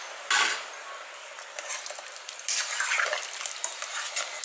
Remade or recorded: recorded